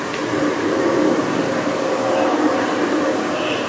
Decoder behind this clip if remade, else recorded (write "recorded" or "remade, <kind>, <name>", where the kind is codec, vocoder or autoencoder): remade, vocoder, BigVGAN v2